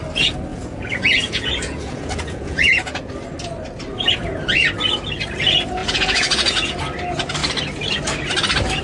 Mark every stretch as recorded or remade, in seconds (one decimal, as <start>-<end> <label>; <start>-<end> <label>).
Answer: 0.0-0.5 recorded; 0.5-3.1 remade; 3.1-5.8 recorded; 5.8-6.8 remade; 6.8-8.8 recorded